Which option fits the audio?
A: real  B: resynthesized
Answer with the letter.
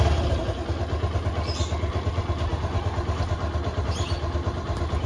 A